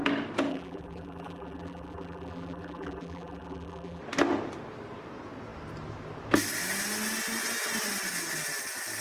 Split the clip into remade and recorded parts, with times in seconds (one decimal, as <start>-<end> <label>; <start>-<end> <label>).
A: 0.0-0.5 recorded; 0.5-4.0 remade; 4.0-9.0 recorded